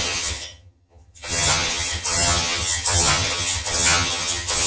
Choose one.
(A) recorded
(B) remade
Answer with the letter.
B